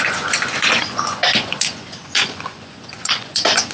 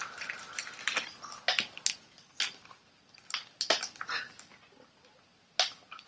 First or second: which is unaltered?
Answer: second